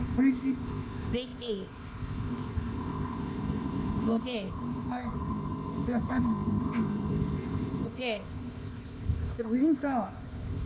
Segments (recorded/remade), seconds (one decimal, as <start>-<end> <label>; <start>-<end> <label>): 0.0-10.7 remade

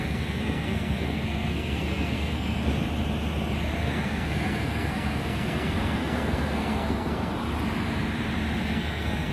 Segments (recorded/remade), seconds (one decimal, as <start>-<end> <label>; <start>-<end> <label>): 0.0-2.7 remade; 2.7-3.8 recorded; 3.8-7.3 remade; 7.3-8.6 recorded; 8.6-9.3 remade

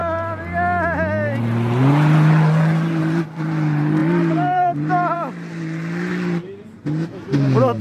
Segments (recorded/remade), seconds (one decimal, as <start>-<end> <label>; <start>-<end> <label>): 0.0-3.0 recorded; 3.0-6.8 remade; 6.8-7.8 recorded

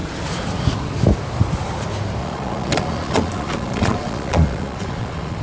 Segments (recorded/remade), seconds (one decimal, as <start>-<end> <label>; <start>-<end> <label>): 0.0-2.2 recorded; 2.2-5.4 remade

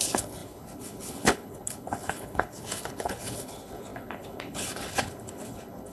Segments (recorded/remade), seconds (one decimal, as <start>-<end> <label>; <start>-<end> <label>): 0.0-5.9 remade

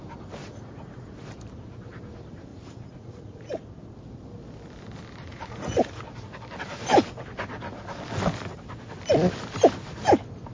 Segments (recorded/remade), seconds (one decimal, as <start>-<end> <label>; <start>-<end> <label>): 0.0-0.4 recorded; 0.4-1.1 remade; 1.1-2.5 recorded; 2.5-3.7 remade; 3.7-5.2 recorded; 5.2-6.0 remade; 6.0-10.5 recorded

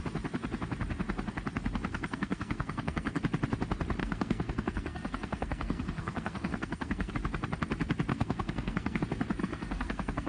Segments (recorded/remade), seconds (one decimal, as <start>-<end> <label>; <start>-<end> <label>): 0.0-1.9 recorded; 1.9-3.2 remade; 3.2-4.0 recorded; 4.0-7.1 remade; 7.1-8.1 recorded; 8.1-9.0 remade; 9.0-9.4 recorded; 9.4-10.3 remade